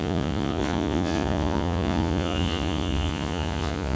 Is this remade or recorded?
remade